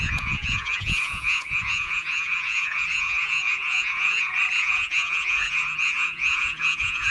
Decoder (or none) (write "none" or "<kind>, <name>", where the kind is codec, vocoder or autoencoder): vocoder, Vocos